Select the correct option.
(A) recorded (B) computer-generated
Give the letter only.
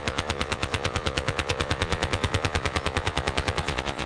B